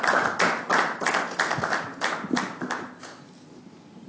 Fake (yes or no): no